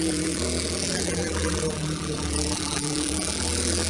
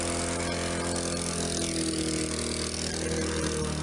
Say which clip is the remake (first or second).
first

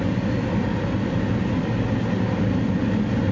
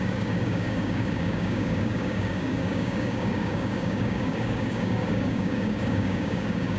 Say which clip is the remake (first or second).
second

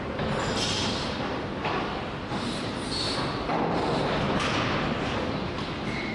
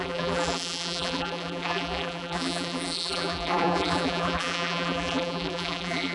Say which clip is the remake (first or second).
second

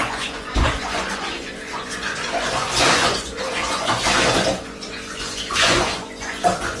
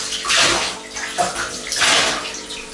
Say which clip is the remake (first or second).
first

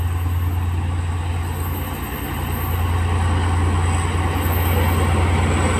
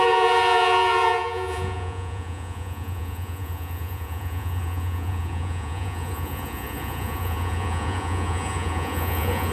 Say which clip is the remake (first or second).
second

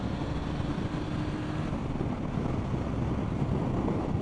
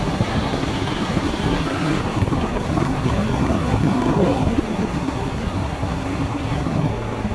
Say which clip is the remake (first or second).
second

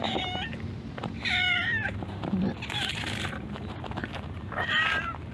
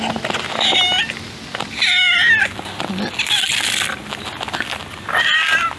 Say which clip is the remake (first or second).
first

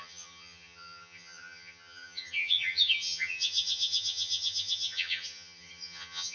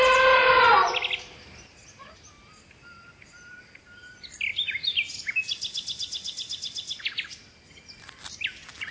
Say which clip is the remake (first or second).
first